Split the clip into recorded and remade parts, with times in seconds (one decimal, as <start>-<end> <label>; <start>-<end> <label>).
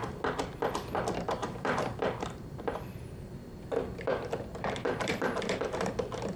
0.0-1.4 recorded; 1.4-3.3 remade; 3.3-4.1 recorded; 4.1-6.4 remade